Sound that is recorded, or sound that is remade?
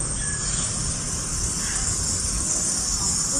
remade